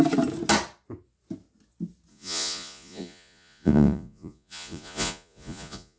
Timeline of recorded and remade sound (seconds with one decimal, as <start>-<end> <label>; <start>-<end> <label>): 0.0-2.1 recorded; 2.1-6.0 remade